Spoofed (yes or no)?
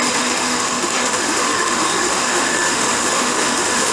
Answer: yes